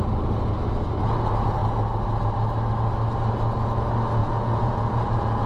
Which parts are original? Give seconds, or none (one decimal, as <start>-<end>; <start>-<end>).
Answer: 0.0-4.2